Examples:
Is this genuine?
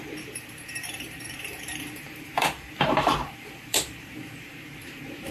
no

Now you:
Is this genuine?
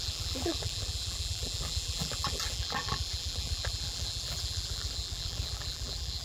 no